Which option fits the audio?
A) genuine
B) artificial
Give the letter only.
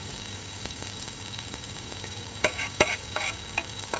B